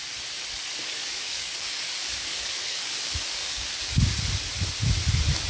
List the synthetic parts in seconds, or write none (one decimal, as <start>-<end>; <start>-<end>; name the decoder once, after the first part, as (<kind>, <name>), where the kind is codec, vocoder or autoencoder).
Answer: 0.8-4.1 (codec, DAC)